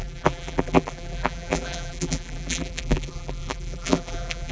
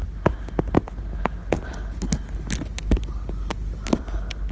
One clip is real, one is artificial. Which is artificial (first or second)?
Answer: first